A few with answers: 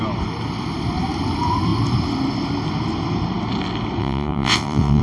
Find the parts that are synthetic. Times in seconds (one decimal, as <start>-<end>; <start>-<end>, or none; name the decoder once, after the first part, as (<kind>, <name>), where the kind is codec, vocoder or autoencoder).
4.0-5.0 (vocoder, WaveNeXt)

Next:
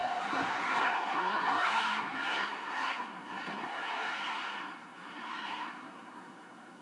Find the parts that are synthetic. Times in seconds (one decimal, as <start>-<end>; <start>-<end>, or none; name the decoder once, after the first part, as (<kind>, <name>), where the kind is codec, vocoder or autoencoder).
0.0-6.8 (codec, SNAC)

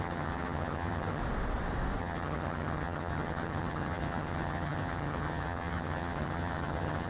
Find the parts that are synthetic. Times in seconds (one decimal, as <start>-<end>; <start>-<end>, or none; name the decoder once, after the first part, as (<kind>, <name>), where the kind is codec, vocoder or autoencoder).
0.0-1.2 (vocoder, HiFi-GAN); 2.0-7.1

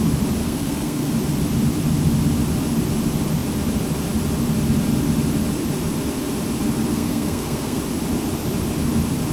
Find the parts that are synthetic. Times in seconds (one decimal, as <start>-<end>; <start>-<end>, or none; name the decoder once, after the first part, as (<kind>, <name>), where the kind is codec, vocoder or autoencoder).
0.4-1.1 (codec, SNAC); 6.9-7.8

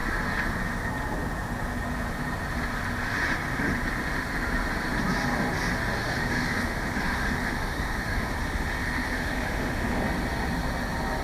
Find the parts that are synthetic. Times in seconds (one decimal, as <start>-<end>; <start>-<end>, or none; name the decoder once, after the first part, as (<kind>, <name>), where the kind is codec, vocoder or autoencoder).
6.0-10.0 (autoencoder, DAC-VAE)

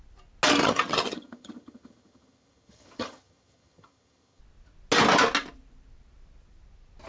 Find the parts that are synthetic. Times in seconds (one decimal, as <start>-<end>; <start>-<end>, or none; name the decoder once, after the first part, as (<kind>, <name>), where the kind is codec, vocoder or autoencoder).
0.6-4.4 (vocoder, HiFi-GAN)

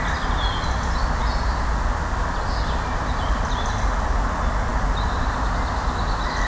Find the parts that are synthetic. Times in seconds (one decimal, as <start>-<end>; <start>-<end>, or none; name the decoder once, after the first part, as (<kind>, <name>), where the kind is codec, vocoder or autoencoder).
none

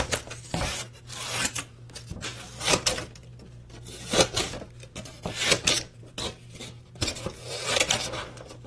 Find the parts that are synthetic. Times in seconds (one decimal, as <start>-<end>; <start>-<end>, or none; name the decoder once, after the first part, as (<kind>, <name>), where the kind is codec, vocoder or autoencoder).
0.0-8.7 (vocoder, BigVGAN v2)